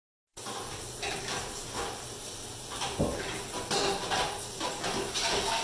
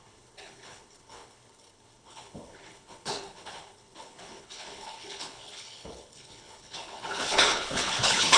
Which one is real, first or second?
first